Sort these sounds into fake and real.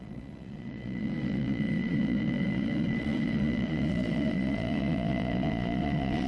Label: fake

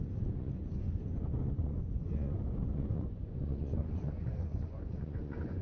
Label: fake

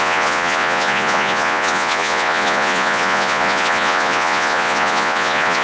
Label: fake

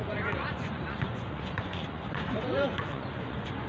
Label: fake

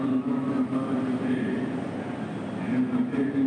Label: real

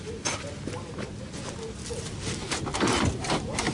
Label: real